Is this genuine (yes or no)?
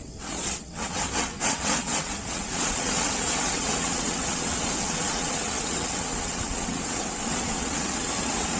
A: no